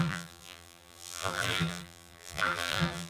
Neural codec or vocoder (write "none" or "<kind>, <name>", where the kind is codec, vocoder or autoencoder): vocoder, BigVGAN v2